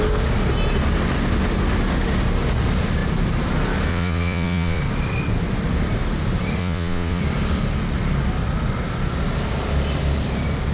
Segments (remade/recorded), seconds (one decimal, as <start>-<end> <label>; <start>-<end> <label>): 0.0-3.9 recorded; 3.9-4.8 remade; 4.8-6.6 recorded; 6.6-7.2 remade; 7.2-10.7 recorded